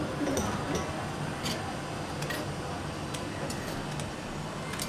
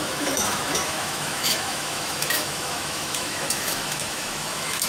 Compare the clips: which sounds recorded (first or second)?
first